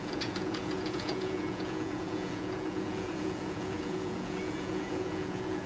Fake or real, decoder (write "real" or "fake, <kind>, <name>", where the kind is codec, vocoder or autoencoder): fake, vocoder, Vocos